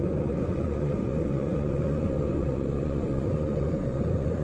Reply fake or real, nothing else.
fake